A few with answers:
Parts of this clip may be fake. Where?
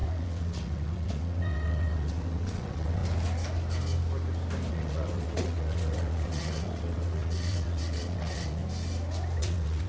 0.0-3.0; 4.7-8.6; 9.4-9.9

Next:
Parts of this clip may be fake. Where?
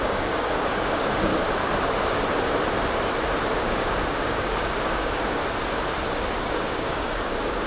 0.0-1.3; 3.6-5.4; 6.4-7.7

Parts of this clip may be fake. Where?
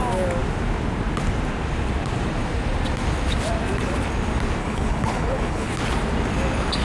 4.6-5.7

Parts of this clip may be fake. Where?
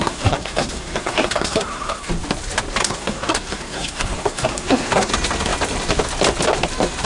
0.0-2.1; 2.8-5.1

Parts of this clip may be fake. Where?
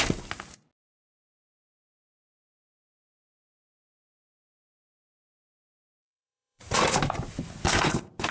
4.4-6.9